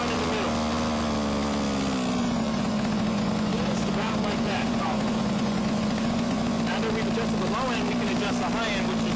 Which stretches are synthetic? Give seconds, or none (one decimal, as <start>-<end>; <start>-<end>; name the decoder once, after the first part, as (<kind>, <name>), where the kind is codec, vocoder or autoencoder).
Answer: 2.2-6.6 (vocoder, Vocos)